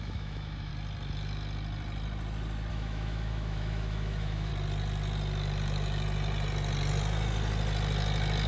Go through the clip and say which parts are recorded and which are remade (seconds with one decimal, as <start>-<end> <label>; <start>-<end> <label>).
0.0-0.7 remade; 0.7-2.7 recorded; 2.7-4.5 remade; 4.5-8.5 recorded